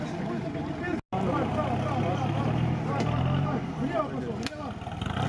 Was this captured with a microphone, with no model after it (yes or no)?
yes